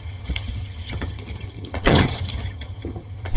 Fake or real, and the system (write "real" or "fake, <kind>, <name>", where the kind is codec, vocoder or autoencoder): fake, vocoder, HiFi-GAN